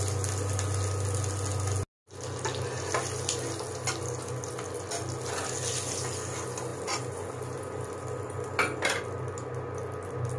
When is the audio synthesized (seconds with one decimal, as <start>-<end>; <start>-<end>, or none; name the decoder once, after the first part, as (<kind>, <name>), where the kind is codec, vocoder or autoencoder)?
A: none

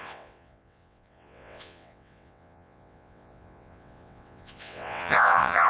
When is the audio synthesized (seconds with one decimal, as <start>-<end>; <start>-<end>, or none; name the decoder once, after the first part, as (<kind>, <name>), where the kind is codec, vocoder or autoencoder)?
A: 0.0-5.7 (vocoder, WaveNeXt)

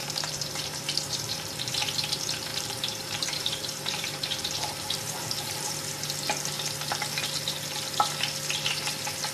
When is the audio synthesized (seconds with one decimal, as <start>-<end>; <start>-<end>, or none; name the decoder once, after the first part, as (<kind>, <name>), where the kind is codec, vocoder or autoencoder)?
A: 0.0-1.7 (vocoder, BigVGAN v2); 2.5-5.8